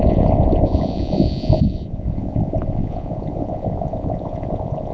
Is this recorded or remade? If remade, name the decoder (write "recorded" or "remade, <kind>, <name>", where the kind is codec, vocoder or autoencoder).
remade, vocoder, Vocos